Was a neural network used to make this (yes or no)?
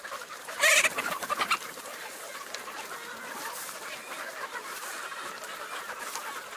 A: no